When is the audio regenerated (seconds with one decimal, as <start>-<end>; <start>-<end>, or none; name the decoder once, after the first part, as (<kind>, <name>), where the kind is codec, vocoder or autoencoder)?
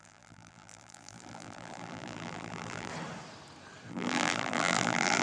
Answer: 0.0-2.9 (vocoder, BigVGAN v2); 3.9-5.2